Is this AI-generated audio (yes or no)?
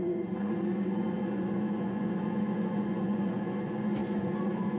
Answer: yes